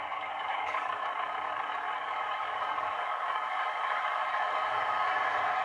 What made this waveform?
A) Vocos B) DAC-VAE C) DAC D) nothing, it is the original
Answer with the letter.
C